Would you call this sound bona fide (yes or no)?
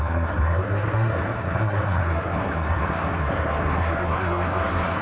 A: no